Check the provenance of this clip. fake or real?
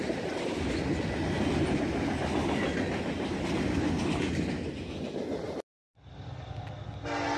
real